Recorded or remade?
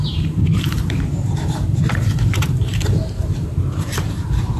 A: remade